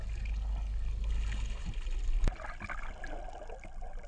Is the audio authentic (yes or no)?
yes